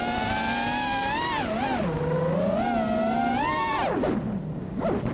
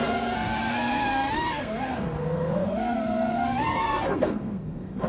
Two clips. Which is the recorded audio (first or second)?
first